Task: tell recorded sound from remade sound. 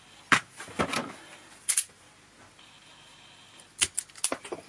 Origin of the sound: recorded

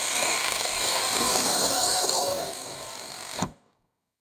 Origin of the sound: remade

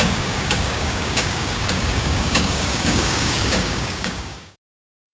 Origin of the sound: remade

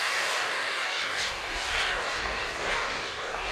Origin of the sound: remade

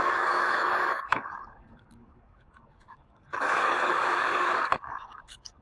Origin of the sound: remade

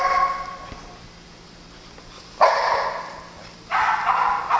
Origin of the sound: recorded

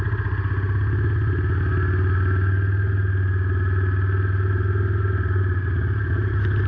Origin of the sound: recorded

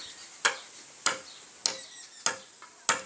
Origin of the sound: recorded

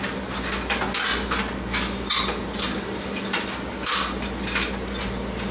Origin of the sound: recorded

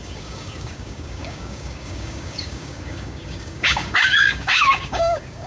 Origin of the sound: remade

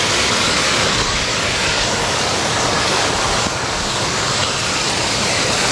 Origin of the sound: remade